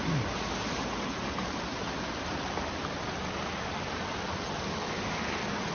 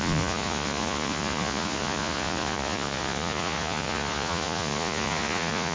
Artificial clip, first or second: second